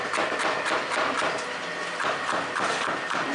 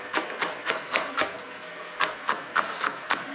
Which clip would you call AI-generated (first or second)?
second